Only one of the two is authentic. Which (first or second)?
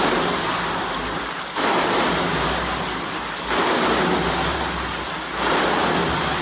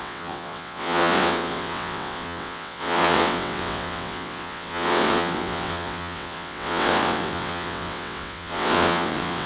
first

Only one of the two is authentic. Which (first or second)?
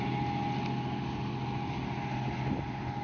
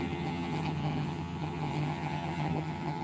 first